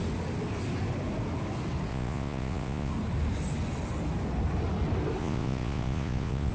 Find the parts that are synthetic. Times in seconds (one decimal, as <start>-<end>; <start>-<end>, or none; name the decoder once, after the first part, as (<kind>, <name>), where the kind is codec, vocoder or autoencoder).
1.9-2.9 (vocoder, Vocos); 5.2-6.5